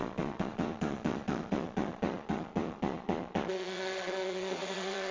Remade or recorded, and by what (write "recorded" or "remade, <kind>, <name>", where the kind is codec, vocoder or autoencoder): remade, vocoder, Vocos